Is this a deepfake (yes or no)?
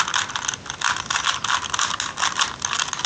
no